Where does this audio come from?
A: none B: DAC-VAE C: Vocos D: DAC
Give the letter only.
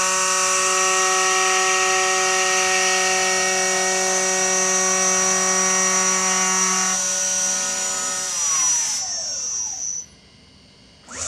A